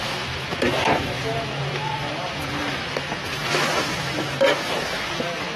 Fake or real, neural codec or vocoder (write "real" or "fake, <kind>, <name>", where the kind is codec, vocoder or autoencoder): fake, autoencoder, DAC-VAE